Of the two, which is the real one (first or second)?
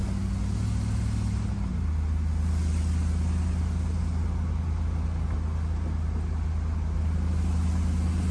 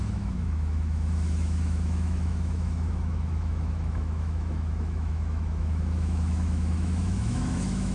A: first